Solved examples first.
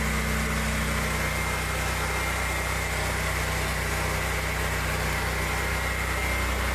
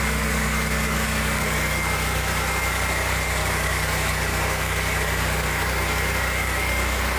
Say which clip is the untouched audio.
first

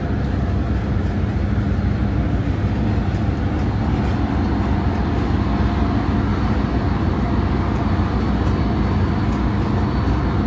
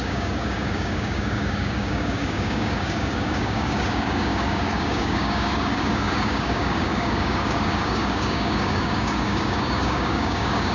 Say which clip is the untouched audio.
first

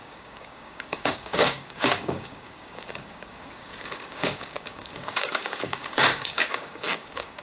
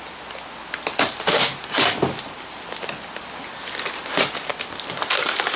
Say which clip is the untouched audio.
second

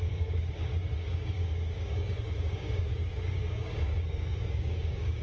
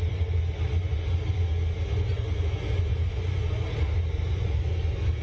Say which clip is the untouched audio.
second